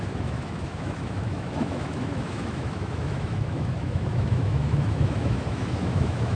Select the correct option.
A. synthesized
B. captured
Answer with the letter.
A